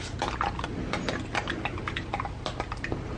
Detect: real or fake real